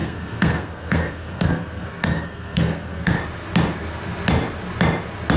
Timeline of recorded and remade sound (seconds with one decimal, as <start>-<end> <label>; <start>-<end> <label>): 0.0-3.2 remade; 3.2-5.4 recorded